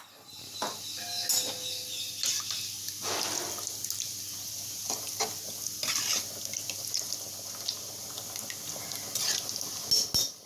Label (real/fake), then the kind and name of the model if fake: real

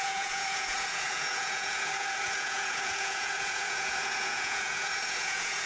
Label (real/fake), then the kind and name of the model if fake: fake, vocoder, Vocos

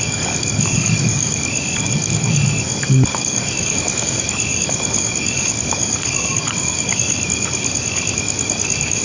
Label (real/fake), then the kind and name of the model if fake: fake, codec, DAC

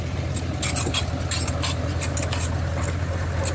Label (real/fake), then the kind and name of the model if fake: real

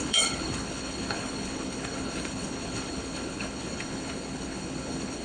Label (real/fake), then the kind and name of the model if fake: fake, codec, HILCodec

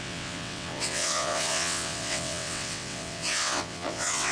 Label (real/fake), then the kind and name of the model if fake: fake, vocoder, WaveNeXt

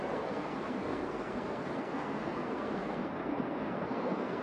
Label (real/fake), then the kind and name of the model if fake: fake, codec, SNAC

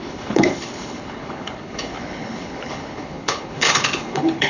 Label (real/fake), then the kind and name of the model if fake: fake, codec, HILCodec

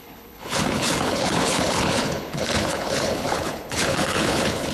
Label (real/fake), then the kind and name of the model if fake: fake, codec, HILCodec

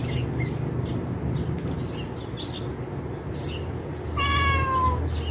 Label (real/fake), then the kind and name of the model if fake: real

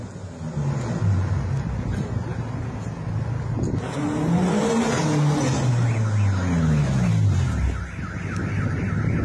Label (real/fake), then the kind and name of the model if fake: real